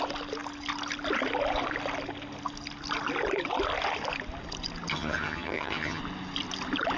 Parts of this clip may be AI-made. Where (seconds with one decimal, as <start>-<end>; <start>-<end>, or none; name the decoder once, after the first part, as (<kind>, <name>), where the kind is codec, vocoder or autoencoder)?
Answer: 4.9-6.0 (vocoder, HiFi-GAN)

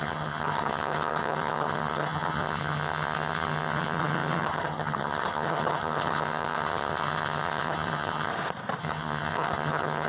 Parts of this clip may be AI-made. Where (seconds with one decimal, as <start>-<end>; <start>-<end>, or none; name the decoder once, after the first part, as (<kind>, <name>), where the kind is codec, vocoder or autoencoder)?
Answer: 0.0-8.3 (vocoder, HiFi-GAN); 8.8-10.1

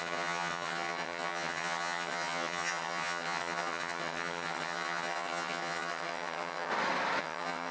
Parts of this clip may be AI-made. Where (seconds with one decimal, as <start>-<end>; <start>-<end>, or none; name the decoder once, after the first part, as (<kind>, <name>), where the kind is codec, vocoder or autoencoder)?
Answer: 0.0-6.7 (vocoder, HiFi-GAN); 7.2-7.7

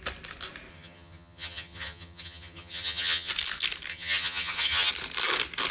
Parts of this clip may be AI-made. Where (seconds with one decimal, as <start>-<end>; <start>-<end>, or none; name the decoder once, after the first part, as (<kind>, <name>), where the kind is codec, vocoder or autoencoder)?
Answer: 0.7-3.3 (vocoder, HiFi-GAN); 3.9-4.9

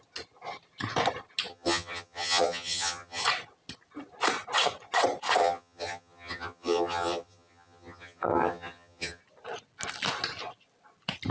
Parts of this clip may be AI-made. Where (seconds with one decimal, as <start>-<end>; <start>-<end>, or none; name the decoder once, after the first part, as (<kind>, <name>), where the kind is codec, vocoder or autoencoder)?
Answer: 1.5-3.2 (vocoder, HiFi-GAN); 5.4-9.2